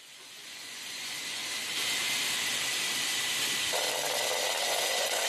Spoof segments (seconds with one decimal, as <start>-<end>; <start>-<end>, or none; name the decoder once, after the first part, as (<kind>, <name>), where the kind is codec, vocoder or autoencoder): 0.0-1.4 (vocoder, Vocos); 4.6-5.3